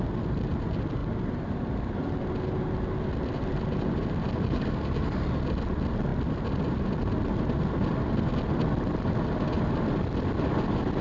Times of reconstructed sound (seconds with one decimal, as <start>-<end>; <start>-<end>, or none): none